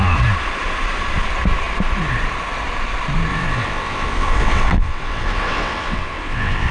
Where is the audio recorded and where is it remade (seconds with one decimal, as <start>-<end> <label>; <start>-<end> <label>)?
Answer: 0.0-3.3 recorded; 3.3-6.7 remade